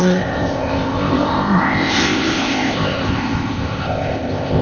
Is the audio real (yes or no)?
no